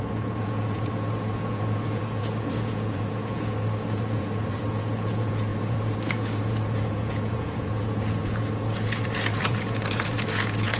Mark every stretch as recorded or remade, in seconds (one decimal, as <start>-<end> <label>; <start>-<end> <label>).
0.0-10.8 remade